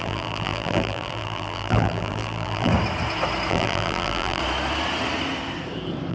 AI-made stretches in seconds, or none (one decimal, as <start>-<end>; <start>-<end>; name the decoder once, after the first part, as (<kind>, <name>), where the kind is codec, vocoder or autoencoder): 0.0-2.7 (vocoder, BigVGAN v2); 3.5-4.4